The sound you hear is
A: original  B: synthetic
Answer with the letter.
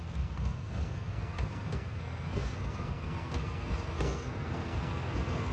B